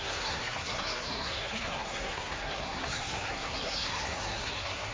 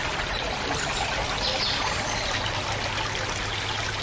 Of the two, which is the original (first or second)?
second